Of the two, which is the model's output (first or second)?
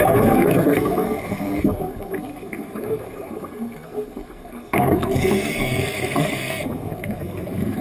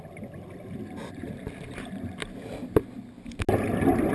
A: first